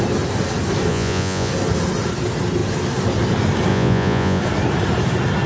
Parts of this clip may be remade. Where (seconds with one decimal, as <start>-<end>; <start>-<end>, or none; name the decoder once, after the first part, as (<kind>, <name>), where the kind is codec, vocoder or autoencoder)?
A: 0.9-1.5 (vocoder, Vocos); 3.7-4.4